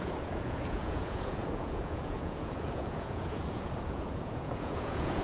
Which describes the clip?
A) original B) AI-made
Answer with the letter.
B